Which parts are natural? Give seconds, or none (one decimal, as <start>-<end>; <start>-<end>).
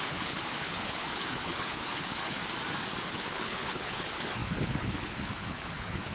2.4-3.0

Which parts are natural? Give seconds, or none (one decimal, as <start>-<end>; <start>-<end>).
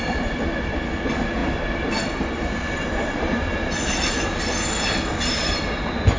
0.0-6.2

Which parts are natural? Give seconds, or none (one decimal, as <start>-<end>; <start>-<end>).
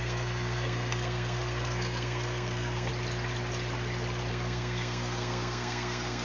2.9-4.3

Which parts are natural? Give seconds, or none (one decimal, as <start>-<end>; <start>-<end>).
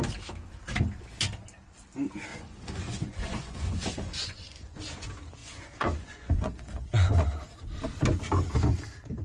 0.0-2.3; 4.8-5.4; 7.6-9.2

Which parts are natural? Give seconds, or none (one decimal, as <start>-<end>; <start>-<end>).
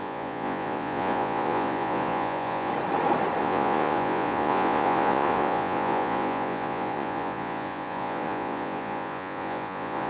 2.7-3.4